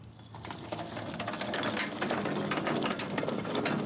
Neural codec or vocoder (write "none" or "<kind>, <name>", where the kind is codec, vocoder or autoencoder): none